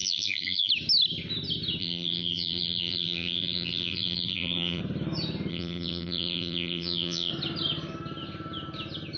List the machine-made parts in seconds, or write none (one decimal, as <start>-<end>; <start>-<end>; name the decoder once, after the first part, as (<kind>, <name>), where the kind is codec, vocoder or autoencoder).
0.0-0.7 (vocoder, BigVGAN v2); 1.8-4.8; 5.5-7.3